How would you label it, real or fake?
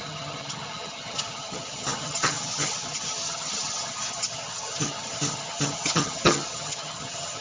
fake